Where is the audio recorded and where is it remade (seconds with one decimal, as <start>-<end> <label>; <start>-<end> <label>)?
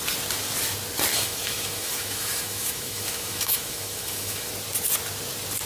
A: 0.0-1.1 recorded; 1.1-4.5 remade; 4.5-5.7 recorded